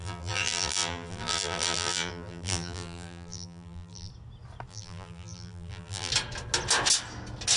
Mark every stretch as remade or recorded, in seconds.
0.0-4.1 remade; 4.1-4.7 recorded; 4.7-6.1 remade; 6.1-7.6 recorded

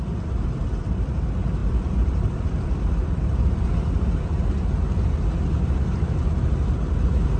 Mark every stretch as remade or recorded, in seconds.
0.0-1.6 recorded; 1.6-3.6 remade; 3.6-7.4 recorded

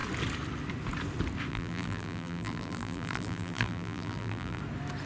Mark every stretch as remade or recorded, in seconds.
0.0-1.5 recorded; 1.5-4.6 remade; 4.6-5.1 recorded

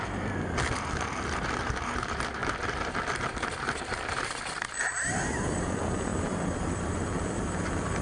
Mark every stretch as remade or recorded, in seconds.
0.0-8.0 remade